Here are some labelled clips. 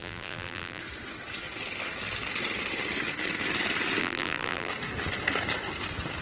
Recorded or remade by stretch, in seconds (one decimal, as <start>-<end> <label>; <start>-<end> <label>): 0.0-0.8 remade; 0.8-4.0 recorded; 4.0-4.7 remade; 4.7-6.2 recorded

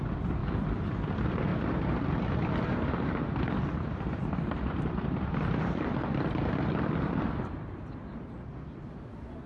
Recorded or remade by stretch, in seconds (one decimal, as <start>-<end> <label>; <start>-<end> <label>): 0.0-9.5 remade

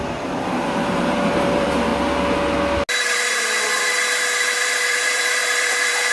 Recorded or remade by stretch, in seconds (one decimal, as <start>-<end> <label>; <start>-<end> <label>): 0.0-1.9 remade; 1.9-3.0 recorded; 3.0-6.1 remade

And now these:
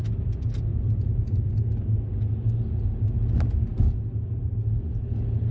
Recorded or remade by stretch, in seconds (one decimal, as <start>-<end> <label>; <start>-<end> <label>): 0.0-0.7 recorded; 0.7-1.5 remade; 1.5-5.5 recorded

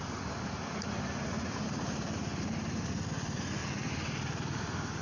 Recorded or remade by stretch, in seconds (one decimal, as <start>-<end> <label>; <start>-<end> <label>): 0.0-5.0 recorded

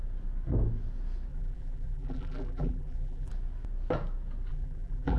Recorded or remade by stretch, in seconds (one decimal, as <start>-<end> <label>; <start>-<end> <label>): 0.0-1.3 recorded; 1.3-3.3 remade; 3.3-4.5 recorded; 4.5-5.2 remade

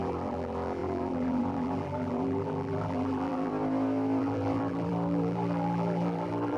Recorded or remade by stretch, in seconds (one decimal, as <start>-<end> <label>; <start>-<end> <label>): 0.0-3.5 remade; 3.5-4.2 recorded; 4.2-6.6 remade

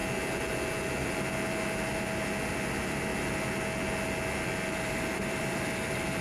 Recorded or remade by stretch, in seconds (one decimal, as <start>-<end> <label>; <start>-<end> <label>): 0.0-2.5 recorded; 2.5-3.1 remade; 3.1-4.8 recorded; 4.8-6.2 remade